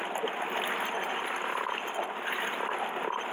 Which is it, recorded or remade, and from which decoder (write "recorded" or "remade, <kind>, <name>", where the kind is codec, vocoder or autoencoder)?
recorded